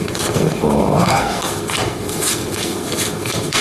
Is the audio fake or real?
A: fake